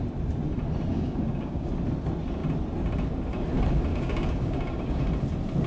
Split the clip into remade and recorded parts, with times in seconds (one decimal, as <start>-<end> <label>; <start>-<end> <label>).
0.0-0.9 recorded; 0.9-1.7 remade; 1.7-3.9 recorded; 3.9-5.0 remade; 5.0-5.7 recorded